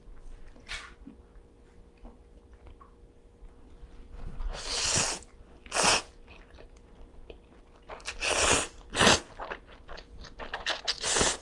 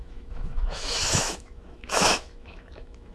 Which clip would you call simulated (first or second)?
second